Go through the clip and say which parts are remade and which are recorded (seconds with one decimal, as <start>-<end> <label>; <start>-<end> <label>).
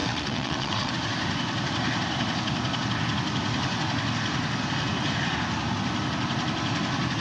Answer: 0.0-0.9 remade; 0.9-7.2 recorded